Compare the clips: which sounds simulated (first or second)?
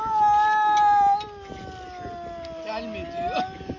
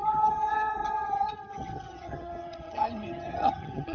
second